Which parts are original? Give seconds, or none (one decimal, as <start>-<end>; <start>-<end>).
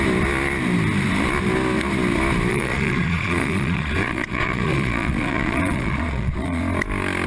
0.0-2.5; 6.6-7.3